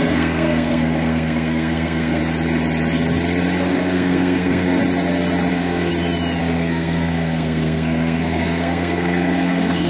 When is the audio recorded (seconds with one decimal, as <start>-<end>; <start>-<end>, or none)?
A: 2.2-3.7; 4.8-5.5; 5.9-6.4